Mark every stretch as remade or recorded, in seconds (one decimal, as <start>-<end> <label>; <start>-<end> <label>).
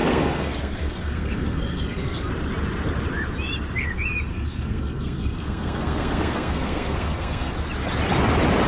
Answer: 0.0-2.3 remade; 2.3-4.3 recorded; 4.3-7.5 remade; 7.5-8.7 recorded